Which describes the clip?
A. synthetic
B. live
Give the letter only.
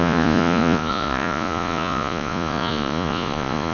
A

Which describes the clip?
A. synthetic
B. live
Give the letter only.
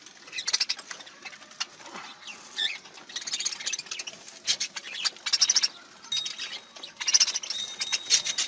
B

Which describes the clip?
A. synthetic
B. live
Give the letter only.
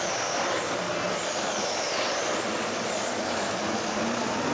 B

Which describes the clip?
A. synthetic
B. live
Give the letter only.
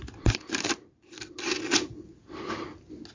B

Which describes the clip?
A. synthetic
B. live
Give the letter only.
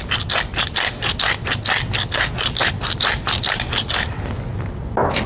B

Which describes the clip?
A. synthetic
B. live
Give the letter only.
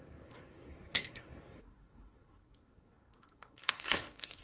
A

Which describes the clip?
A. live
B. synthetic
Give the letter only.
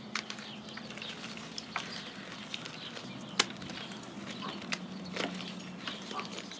A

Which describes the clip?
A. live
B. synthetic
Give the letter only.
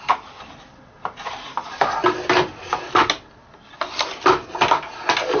A